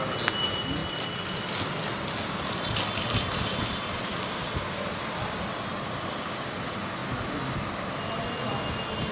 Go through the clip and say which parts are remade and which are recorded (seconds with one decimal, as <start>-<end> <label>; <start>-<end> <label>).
0.0-9.1 recorded